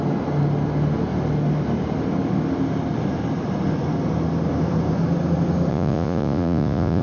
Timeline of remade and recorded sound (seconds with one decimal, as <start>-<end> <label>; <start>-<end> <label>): 0.0-5.7 recorded; 5.7-7.0 remade